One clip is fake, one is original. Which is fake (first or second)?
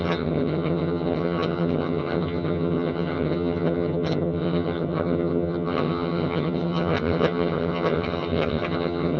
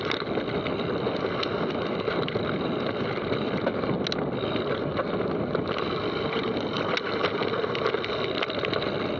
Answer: first